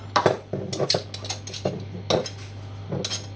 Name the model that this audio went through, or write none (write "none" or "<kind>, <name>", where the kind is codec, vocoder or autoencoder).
none